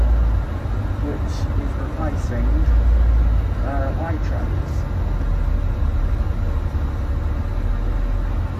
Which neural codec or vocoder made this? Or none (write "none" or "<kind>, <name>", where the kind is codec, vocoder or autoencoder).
none